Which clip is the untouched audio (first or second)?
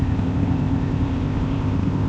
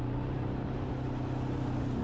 second